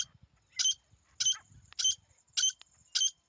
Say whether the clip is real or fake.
real